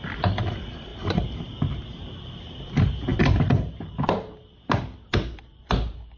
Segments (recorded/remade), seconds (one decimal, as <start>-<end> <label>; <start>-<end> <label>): 0.0-0.9 recorded; 0.9-1.4 remade; 1.4-6.2 recorded